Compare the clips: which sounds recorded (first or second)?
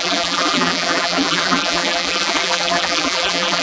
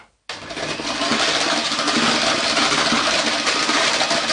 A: second